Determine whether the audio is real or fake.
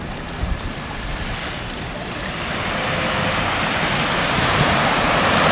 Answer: real